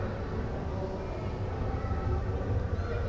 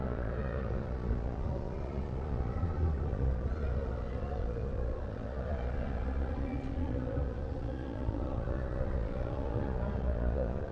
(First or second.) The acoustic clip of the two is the first